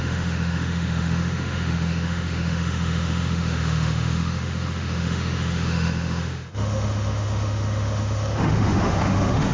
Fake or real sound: fake